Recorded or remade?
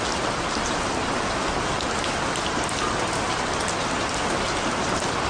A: recorded